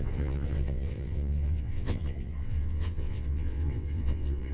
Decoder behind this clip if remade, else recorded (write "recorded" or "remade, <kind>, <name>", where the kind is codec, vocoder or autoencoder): remade, vocoder, WaveNeXt